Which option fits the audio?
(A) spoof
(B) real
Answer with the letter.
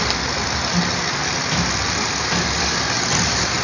B